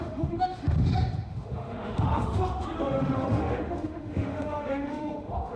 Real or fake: fake